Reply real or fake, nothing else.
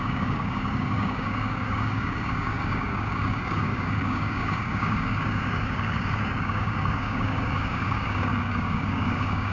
fake